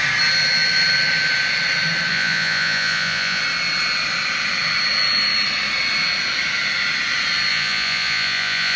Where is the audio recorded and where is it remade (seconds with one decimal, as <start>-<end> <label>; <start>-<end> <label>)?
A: 0.0-2.1 recorded; 2.1-3.4 remade; 3.4-7.5 recorded; 7.5-8.8 remade